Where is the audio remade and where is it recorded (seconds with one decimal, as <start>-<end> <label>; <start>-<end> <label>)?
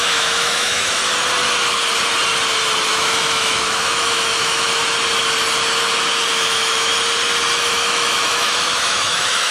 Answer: 0.0-1.0 remade; 1.0-2.9 recorded; 2.9-4.8 remade; 4.8-6.3 recorded; 6.3-6.9 remade; 6.9-7.5 recorded; 7.5-9.5 remade